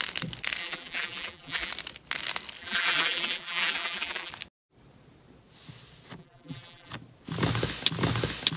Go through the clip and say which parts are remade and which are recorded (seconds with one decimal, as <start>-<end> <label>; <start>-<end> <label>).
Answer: 0.0-0.6 recorded; 0.6-1.7 remade; 1.7-2.6 recorded; 2.6-4.3 remade; 4.3-6.2 recorded; 6.2-6.9 remade; 6.9-8.6 recorded